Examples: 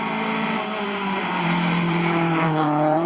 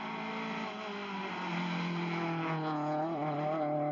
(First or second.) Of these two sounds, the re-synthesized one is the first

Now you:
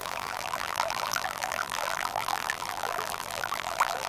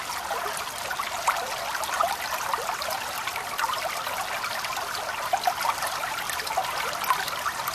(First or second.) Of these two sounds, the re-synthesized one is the first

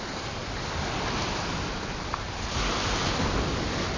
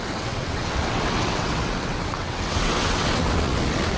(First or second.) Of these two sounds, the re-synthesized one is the second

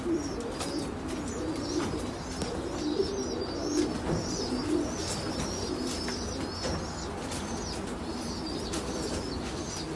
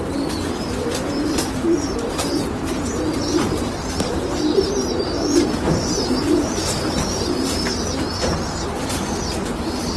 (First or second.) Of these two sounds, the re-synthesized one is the second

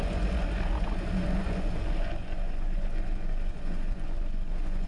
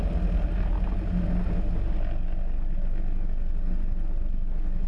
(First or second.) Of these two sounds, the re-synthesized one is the first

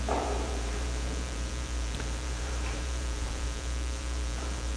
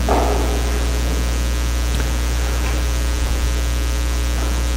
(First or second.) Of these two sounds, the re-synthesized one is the first